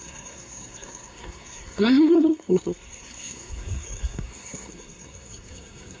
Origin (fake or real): fake